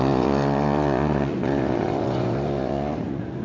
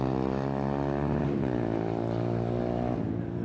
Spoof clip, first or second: first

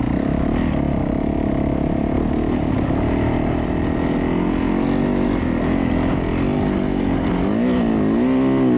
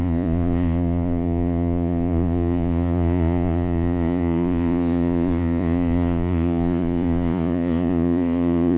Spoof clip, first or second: second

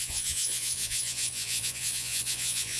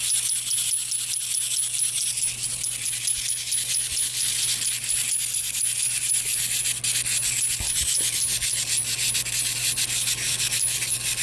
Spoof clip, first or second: first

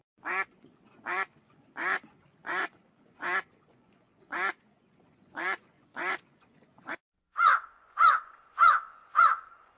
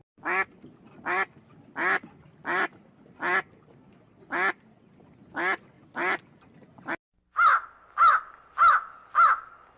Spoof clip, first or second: first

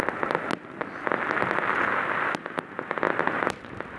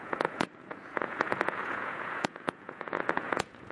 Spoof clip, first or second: second